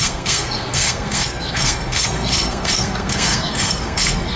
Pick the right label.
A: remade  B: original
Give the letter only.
A